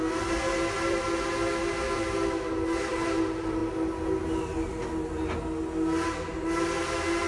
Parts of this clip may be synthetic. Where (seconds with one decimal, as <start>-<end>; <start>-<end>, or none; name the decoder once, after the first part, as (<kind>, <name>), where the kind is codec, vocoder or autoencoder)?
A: none